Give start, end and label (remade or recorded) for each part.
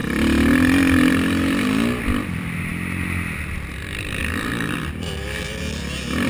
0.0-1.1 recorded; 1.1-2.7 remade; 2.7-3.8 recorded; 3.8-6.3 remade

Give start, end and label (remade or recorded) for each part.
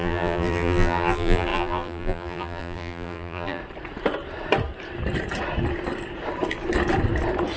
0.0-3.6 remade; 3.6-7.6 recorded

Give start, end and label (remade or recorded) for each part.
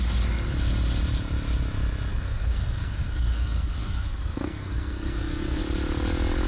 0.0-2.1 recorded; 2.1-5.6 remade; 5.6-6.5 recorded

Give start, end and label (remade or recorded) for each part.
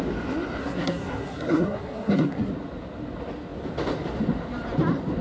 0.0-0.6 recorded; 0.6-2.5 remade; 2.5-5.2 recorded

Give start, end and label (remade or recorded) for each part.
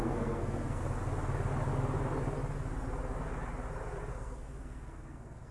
0.0-0.8 remade; 0.8-4.1 recorded; 4.1-5.5 remade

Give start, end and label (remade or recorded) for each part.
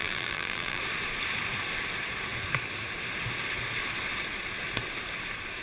0.0-0.8 remade; 0.8-5.6 recorded